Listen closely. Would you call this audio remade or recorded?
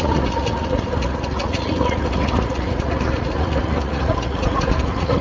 remade